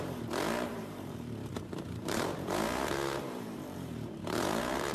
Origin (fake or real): fake